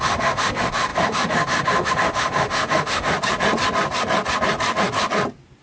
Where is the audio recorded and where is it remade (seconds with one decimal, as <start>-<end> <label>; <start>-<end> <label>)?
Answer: 0.0-3.1 remade; 3.1-5.6 recorded